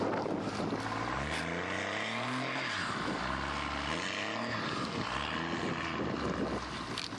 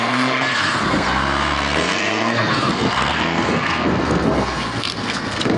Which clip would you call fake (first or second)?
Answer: second